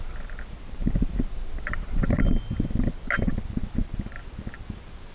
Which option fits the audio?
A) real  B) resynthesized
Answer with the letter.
A